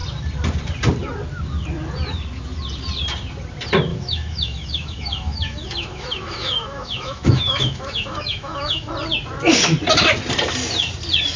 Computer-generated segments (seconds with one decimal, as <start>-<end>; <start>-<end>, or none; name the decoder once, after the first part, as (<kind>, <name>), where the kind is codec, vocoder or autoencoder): 3.9-8.9 (autoencoder, DAC-VAE)